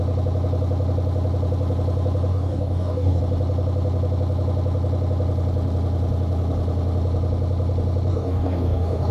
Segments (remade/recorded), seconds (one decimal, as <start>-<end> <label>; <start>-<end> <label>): 0.0-2.3 recorded; 2.3-3.2 remade; 3.2-8.1 recorded; 8.1-9.1 remade